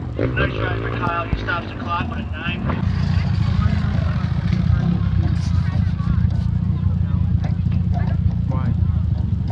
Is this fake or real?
real